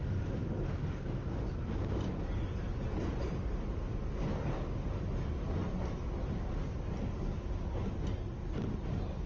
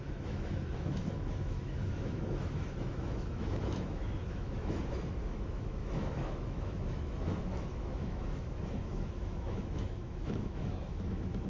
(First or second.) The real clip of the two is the first